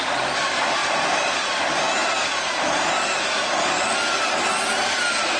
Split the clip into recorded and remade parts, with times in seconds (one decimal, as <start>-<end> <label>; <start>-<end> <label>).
0.0-0.8 recorded; 0.8-1.6 remade; 1.6-5.4 recorded